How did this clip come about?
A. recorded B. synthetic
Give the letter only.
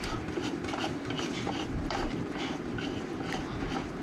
B